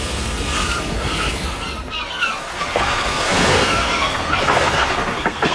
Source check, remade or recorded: remade